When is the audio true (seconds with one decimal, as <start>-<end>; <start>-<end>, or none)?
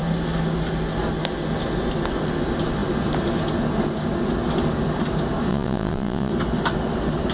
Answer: 0.0-5.5; 6.3-7.3